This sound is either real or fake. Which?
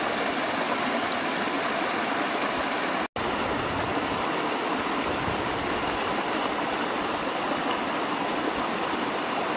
real